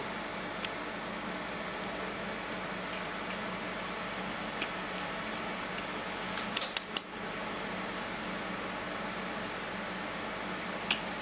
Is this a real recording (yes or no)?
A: yes